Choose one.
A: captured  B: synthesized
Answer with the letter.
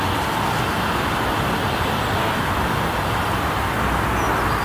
A